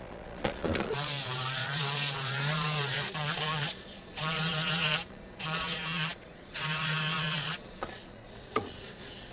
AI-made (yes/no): yes